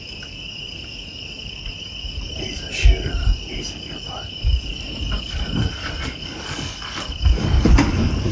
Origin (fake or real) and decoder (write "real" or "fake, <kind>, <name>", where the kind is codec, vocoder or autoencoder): fake, codec, DAC